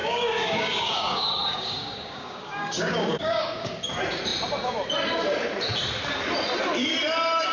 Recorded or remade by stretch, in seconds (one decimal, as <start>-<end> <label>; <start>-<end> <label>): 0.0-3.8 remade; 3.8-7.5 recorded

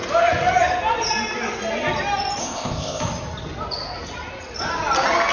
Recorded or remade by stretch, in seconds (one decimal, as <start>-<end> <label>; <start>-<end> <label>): 0.0-2.4 recorded; 2.4-3.0 remade; 3.0-5.3 recorded

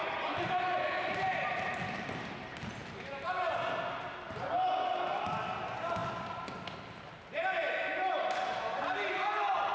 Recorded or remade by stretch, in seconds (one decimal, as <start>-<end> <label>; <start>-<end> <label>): 0.0-9.7 recorded

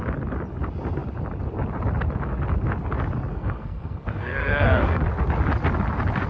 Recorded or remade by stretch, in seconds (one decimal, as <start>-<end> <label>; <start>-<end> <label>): 0.0-3.3 recorded; 3.3-5.0 remade; 5.0-6.3 recorded

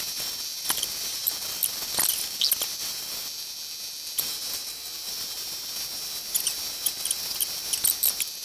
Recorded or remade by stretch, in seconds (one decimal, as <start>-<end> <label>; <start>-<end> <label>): 0.0-8.4 recorded